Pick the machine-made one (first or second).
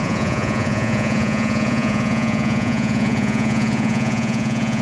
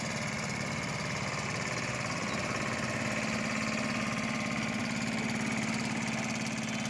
first